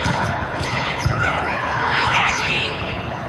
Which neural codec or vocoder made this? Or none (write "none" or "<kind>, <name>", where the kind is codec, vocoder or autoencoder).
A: codec, HILCodec